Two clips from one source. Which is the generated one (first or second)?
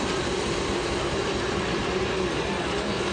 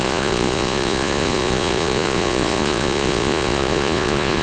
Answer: second